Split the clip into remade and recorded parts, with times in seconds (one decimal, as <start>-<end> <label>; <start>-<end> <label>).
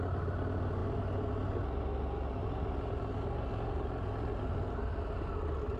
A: 0.0-5.8 recorded